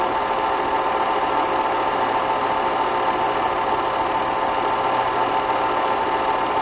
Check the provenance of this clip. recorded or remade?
recorded